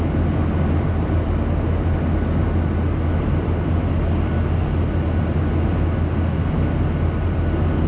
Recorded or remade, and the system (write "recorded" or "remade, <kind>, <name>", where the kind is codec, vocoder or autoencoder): recorded